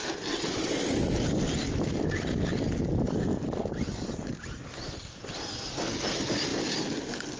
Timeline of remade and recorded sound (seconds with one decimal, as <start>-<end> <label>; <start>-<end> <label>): 0.0-7.4 recorded